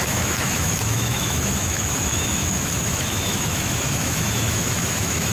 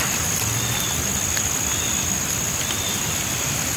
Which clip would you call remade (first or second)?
first